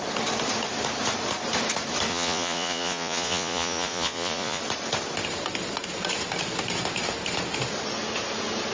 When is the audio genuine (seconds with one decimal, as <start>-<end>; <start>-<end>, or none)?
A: 0.0-2.1; 4.6-8.7